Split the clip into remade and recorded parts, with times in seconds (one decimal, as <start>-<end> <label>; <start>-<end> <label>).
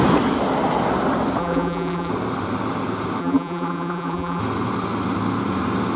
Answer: 0.0-1.4 recorded; 1.4-2.1 remade; 2.1-3.2 recorded; 3.2-4.4 remade; 4.4-6.0 recorded